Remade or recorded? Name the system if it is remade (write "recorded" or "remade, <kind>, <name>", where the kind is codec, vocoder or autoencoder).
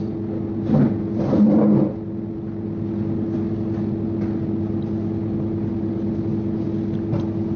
recorded